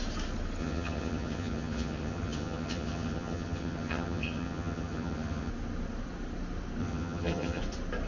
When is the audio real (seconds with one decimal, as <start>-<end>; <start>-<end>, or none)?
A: 0.0-0.6; 5.5-6.8; 7.6-8.1